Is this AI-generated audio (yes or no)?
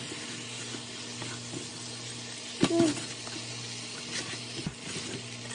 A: no